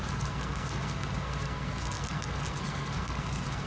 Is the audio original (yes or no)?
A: no